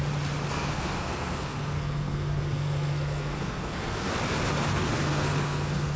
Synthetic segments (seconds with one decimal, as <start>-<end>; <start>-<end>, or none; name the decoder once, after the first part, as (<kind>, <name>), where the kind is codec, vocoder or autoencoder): 0.5-4.1 (codec, SNAC); 4.7-6.0